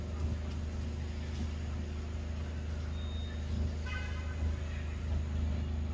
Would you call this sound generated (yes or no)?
no